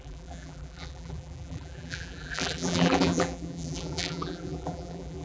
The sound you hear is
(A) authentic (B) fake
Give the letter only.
B